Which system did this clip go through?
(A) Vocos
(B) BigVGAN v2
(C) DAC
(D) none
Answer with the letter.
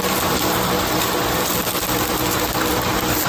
B